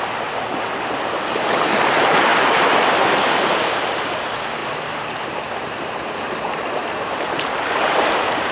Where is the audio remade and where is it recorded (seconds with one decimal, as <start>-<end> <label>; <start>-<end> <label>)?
0.0-8.5 recorded